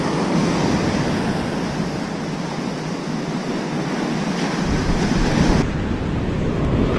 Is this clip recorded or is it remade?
recorded